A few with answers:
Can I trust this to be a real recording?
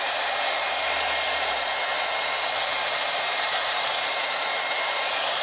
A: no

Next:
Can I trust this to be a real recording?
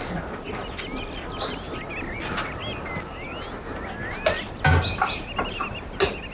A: yes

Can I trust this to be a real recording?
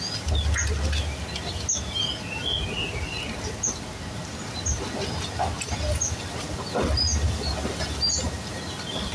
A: yes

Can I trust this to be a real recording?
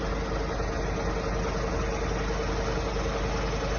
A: yes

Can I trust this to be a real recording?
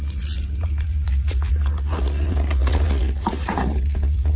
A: no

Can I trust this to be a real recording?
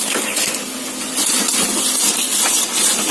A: yes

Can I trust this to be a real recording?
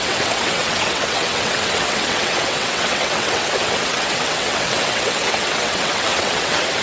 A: no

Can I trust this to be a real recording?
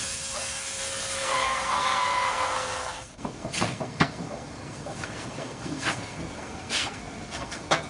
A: no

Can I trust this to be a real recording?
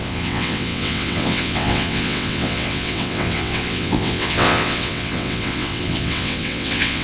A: no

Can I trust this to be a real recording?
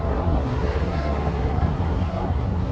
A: no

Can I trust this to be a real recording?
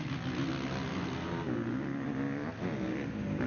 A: yes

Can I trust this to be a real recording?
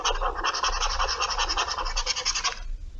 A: yes